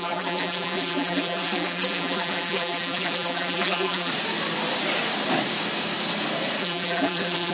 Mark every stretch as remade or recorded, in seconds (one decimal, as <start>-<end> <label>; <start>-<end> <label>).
0.0-4.1 remade; 4.1-6.6 recorded; 6.6-7.5 remade

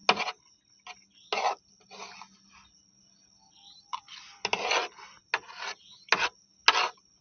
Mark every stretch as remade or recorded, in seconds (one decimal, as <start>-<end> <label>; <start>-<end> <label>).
0.0-7.2 recorded

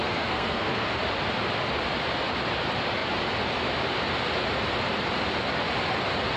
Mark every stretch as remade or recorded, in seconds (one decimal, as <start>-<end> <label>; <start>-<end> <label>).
0.0-1.0 remade; 1.0-6.4 recorded

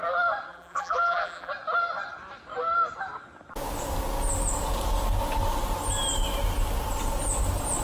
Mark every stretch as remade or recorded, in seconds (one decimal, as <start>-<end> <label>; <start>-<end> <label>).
0.0-0.5 recorded; 0.5-1.5 remade; 1.5-7.8 recorded